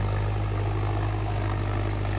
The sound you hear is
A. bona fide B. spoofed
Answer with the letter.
A